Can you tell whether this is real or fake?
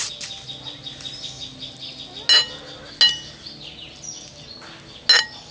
real